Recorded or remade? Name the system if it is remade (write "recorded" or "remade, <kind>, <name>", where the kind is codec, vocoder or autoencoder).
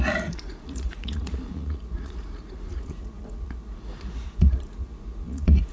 remade, vocoder, Vocos